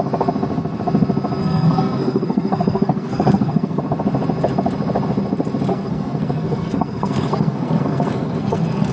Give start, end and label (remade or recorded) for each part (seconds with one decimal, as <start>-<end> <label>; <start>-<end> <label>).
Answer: 0.0-1.4 recorded; 1.4-3.8 remade; 3.8-5.7 recorded; 5.7-8.9 remade